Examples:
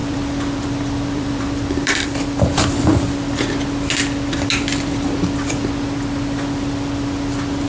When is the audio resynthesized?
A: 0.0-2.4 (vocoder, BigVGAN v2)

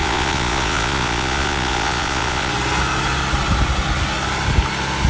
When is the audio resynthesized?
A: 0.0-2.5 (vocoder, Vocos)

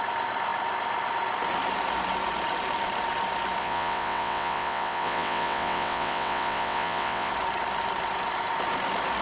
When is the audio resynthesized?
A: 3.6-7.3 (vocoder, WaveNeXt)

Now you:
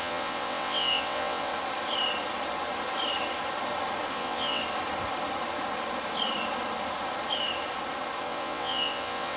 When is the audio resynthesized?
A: 0.0-1.5 (vocoder, WaveNeXt); 4.1-4.6; 8.2-9.4